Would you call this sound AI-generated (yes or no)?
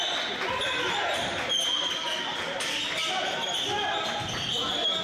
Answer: no